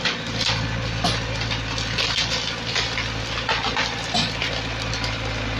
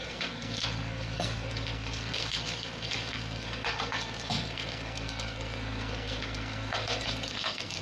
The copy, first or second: second